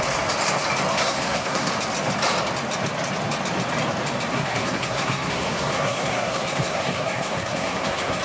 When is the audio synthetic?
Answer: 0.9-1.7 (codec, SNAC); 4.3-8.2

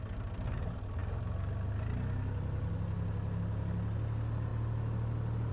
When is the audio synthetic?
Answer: none

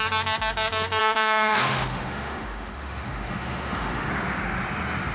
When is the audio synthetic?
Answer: 1.0-4.1 (autoencoder, DAC-VAE)

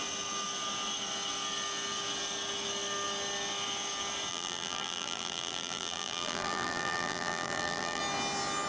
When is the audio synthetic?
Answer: 4.3-8.0 (vocoder, BigVGAN v2)

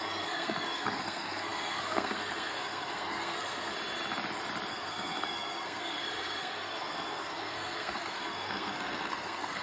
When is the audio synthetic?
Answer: 0.0-3.7 (codec, SNAC); 4.7-9.6

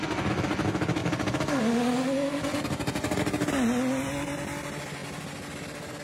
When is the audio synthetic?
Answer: none

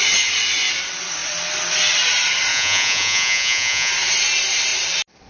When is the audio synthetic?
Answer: 2.5-3.9 (vocoder, Vocos)

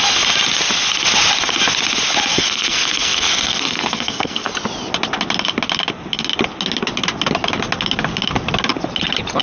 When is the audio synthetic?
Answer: 2.3-4.5 (codec, SNAC)